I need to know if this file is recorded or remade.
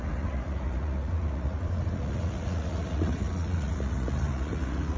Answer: remade